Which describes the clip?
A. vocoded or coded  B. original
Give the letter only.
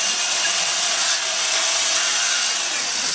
A